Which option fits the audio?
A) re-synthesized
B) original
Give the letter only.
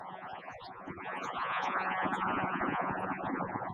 A